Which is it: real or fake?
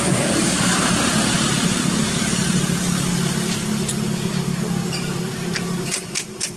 real